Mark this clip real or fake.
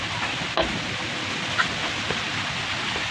real